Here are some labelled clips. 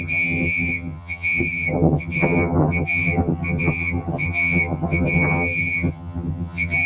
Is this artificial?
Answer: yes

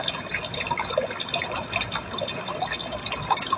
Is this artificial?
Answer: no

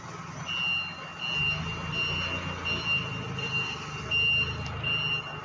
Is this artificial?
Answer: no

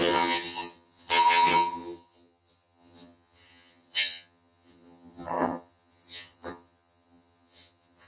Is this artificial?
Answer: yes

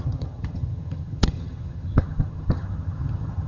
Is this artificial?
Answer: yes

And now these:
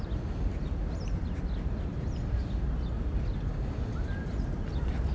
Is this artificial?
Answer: no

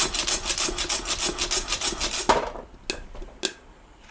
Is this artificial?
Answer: no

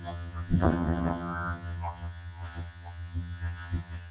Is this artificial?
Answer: yes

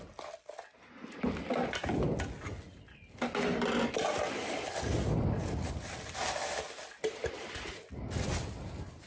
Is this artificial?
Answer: no